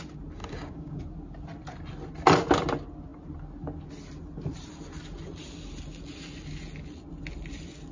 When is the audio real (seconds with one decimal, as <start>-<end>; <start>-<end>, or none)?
0.0-0.4; 1.0-7.9